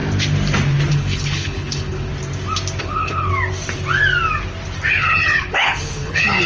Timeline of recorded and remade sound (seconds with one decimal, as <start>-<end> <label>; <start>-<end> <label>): 0.0-0.9 recorded; 0.9-2.1 remade; 2.1-2.8 recorded; 2.8-3.3 remade; 3.3-4.9 recorded; 4.9-6.5 remade